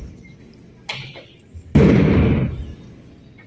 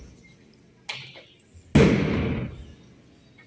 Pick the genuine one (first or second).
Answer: second